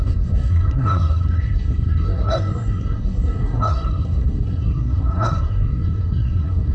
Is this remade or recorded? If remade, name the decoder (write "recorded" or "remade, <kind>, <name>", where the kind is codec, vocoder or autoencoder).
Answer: remade, codec, SNAC